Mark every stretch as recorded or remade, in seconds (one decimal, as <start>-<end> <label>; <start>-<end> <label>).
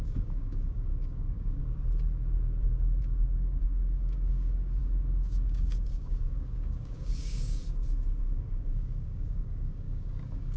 0.0-1.6 remade; 1.6-3.0 recorded; 3.0-7.6 remade; 7.6-8.2 recorded; 8.2-10.6 remade